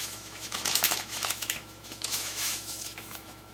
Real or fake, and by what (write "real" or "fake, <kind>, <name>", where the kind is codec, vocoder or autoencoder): fake, autoencoder, DAC-VAE